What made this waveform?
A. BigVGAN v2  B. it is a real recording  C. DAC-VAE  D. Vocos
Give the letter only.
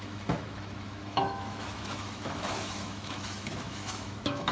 C